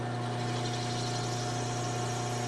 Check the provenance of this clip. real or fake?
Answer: real